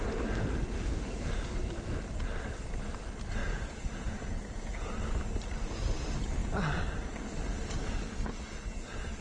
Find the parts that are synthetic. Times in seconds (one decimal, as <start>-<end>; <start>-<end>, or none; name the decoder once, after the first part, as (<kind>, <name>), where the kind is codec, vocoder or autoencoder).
3.4-4.9 (vocoder, Vocos)

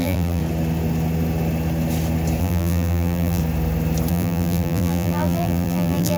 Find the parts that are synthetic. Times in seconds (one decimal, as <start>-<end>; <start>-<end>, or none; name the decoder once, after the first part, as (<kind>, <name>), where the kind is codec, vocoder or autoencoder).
0.0-0.4 (vocoder, BigVGAN v2); 2.4-3.4; 4.1-6.2

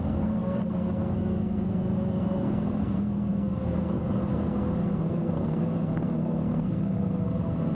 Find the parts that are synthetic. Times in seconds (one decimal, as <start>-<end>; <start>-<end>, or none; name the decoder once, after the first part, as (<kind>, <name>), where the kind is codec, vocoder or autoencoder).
0.0-7.7 (codec, SNAC)